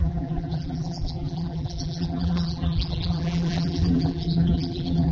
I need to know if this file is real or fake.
fake